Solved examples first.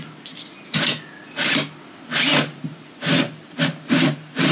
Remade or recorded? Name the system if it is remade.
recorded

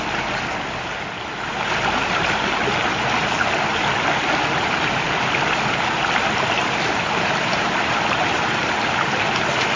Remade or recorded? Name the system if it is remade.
recorded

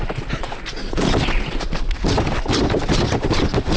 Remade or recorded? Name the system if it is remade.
recorded